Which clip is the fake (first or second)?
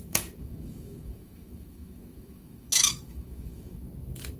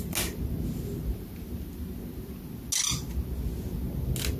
first